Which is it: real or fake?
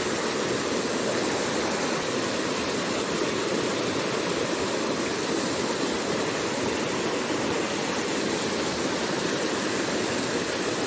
real